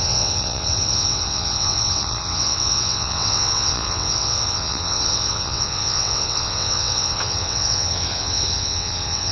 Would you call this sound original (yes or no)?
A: no